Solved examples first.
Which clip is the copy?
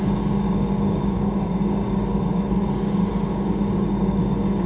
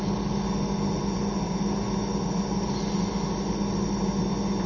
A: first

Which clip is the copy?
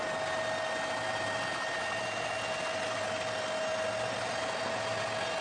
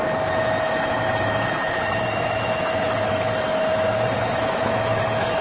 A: second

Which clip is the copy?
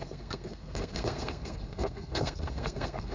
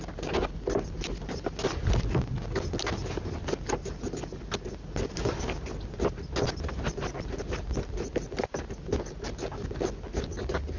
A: first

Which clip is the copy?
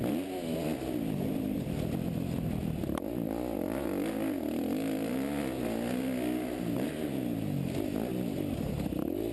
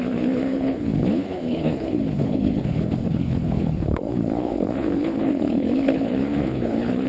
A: second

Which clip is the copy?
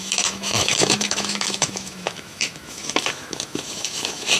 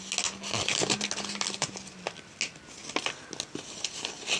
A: first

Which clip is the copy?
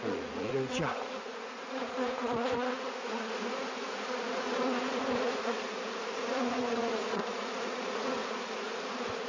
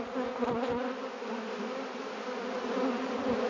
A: first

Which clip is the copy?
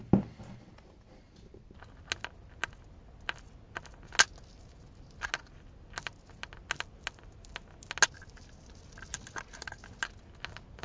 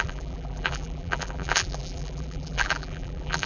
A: second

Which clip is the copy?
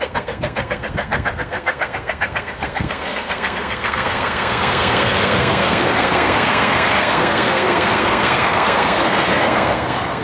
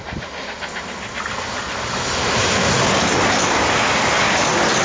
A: first